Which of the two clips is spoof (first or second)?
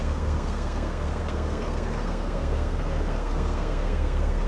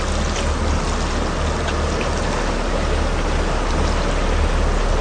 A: first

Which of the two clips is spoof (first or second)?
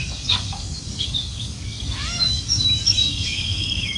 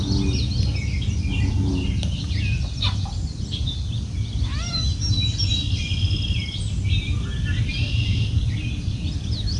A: first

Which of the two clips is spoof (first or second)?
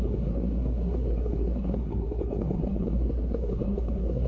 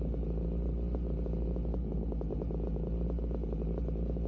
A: first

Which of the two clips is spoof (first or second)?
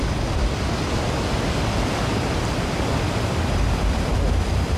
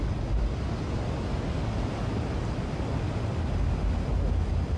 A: first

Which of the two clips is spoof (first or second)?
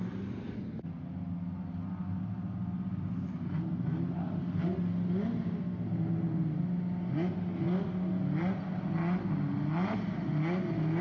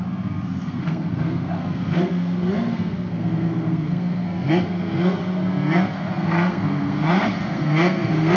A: second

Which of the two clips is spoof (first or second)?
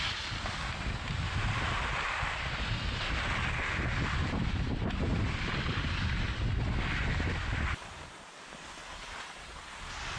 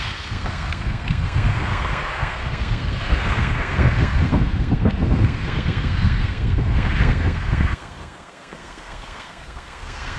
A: second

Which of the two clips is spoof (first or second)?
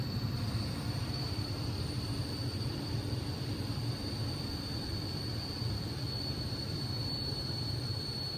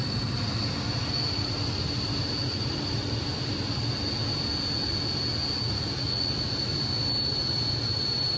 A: first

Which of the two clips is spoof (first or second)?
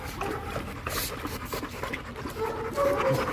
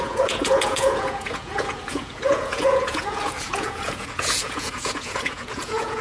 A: second